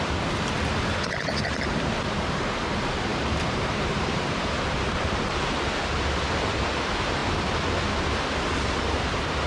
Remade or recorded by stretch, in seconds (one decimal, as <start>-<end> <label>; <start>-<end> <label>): 0.0-3.1 recorded; 3.1-5.7 remade; 5.7-9.5 recorded